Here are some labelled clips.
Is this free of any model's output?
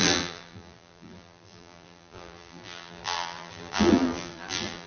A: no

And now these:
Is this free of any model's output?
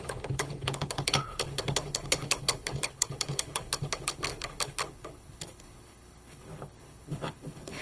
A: no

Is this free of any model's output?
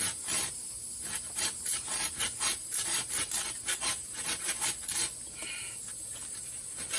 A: no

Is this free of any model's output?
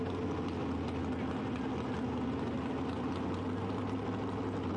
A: yes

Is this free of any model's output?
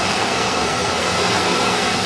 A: no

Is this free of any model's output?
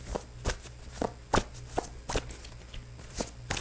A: yes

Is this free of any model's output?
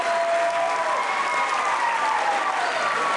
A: yes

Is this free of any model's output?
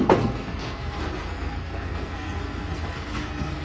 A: no